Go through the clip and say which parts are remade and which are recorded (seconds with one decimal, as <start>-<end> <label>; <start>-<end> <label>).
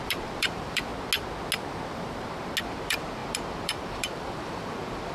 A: 0.0-0.9 remade; 0.9-2.6 recorded; 2.6-5.1 remade